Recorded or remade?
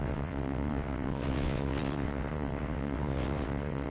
remade